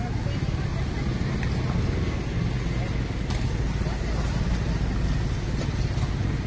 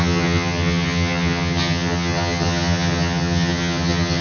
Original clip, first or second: first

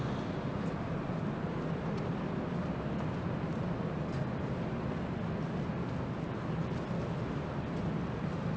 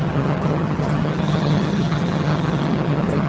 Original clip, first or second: first